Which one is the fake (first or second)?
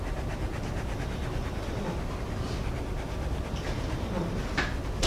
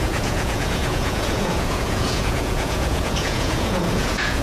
second